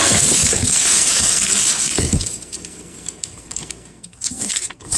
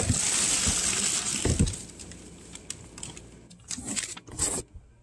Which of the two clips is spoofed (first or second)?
first